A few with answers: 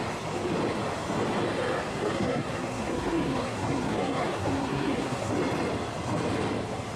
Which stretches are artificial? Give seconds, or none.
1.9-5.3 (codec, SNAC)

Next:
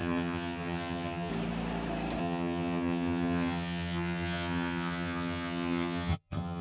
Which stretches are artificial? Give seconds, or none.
0.0-1.3 (vocoder, HiFi-GAN); 2.2-6.6